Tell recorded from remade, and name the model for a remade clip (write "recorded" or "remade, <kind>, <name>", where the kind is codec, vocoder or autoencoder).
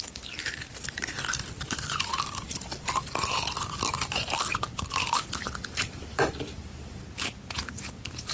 remade, vocoder, BigVGAN v2